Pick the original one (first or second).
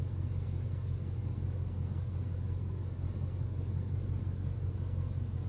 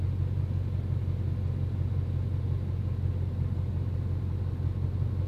second